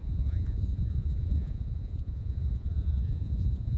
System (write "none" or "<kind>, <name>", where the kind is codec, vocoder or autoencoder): vocoder, Vocos